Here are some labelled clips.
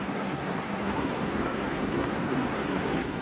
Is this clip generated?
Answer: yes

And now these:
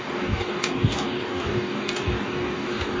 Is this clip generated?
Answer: yes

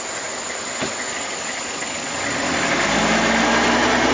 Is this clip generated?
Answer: no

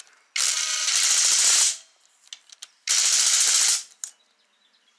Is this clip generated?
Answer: no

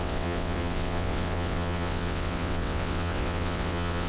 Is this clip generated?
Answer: yes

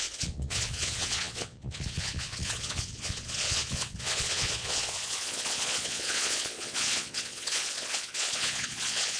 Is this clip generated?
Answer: yes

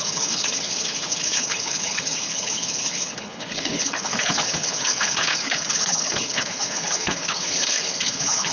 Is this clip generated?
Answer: yes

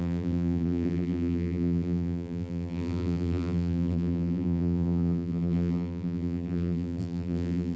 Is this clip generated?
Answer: yes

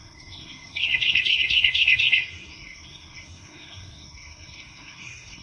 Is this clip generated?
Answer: yes